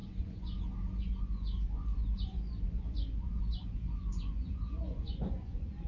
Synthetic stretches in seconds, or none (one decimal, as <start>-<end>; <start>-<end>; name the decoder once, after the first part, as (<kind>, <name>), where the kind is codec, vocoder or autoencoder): 0.0-5.9 (vocoder, Vocos)